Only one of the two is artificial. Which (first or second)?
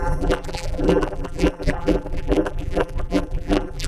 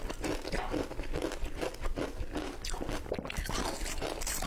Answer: first